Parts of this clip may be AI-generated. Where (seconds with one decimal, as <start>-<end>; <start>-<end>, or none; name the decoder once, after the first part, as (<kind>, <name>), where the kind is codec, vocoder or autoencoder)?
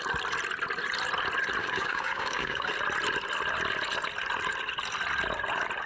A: 1.6-2.7 (codec, DAC)